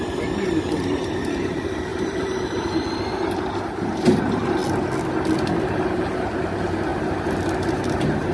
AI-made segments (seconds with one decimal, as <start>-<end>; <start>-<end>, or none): 0.0-4.6; 5.9-6.9; 7.7-8.3